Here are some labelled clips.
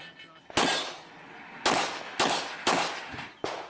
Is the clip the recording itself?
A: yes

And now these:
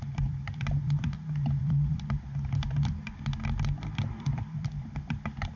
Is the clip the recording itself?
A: no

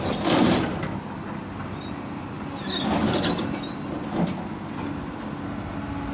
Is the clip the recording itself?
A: yes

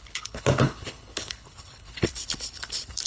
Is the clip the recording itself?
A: no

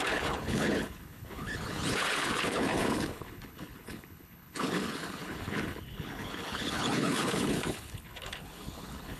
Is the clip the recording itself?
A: no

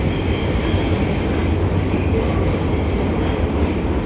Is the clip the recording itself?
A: yes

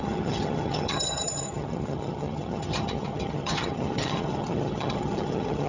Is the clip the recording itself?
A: no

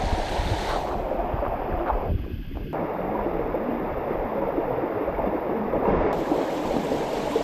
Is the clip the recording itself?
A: yes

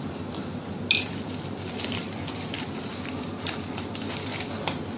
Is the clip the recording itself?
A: yes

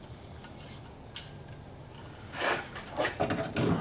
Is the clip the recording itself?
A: yes